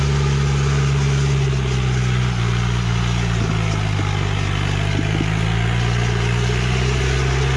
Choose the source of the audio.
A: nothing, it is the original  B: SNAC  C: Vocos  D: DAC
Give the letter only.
A